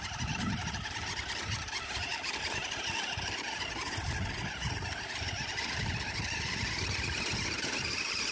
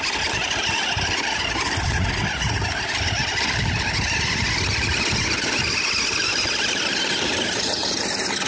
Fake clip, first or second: first